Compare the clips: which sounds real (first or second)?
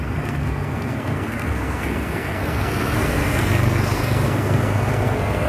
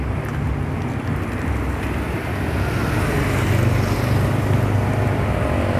second